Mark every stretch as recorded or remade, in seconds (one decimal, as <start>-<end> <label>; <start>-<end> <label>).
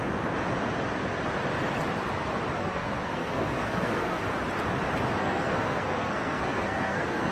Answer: 0.0-2.6 recorded; 2.6-4.2 remade; 4.2-5.2 recorded; 5.2-7.3 remade